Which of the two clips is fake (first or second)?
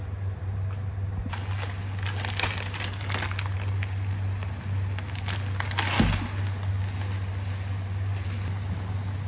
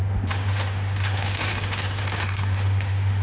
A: second